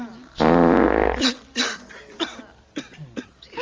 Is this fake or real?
real